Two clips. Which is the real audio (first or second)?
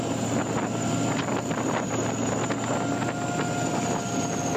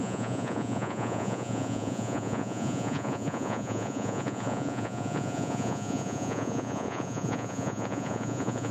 first